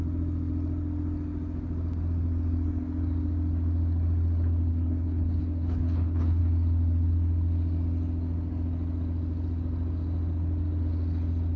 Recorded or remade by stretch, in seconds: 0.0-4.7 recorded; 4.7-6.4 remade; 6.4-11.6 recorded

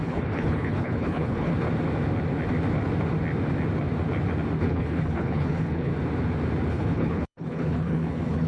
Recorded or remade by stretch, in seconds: 0.0-1.5 remade; 1.5-4.6 recorded; 4.6-5.9 remade; 5.9-6.7 recorded; 6.7-8.5 remade

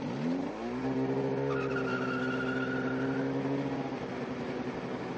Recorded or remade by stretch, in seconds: 0.0-5.2 recorded

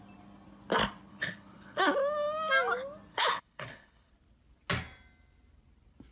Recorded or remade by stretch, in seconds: 0.0-1.1 recorded; 1.1-1.8 remade; 1.8-3.1 recorded; 3.1-4.1 remade; 4.1-6.1 recorded

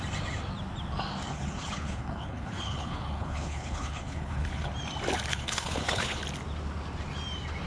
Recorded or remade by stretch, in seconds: 0.0-1.3 recorded; 1.3-4.7 remade; 4.7-5.3 recorded; 5.3-6.2 remade; 6.2-7.7 recorded